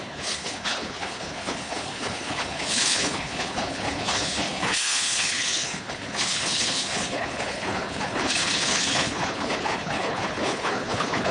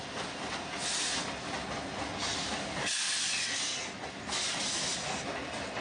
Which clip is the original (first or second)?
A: second